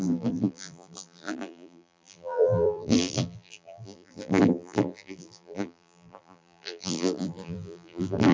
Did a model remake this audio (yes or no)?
yes